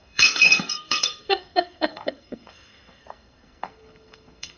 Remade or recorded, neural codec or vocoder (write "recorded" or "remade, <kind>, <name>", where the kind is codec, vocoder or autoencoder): remade, codec, SNAC